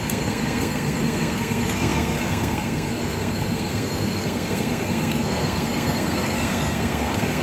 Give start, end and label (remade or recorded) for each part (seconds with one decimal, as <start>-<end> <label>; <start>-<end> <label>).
0.0-7.4 remade